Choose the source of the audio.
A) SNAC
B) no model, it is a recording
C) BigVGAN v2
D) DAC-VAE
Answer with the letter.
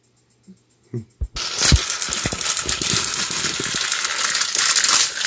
B